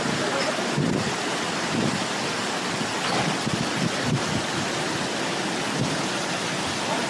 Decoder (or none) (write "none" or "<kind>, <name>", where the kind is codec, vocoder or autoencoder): none